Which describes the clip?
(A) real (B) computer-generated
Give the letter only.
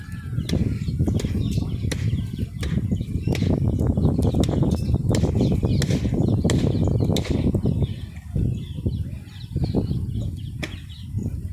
A